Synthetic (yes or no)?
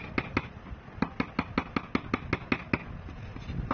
no